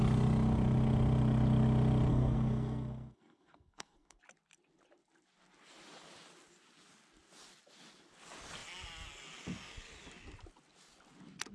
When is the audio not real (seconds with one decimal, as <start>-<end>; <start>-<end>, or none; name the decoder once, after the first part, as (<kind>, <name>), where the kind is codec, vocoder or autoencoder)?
2.1-4.2 (codec, SNAC)